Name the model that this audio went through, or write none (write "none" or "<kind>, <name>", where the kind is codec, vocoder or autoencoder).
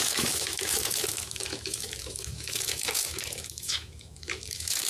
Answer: autoencoder, DAC-VAE